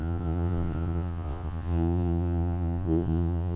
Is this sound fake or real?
fake